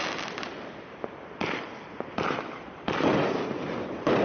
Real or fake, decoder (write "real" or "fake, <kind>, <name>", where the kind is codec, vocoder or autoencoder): real